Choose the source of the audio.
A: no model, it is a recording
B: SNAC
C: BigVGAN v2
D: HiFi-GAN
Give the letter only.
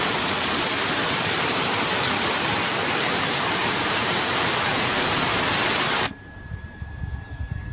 C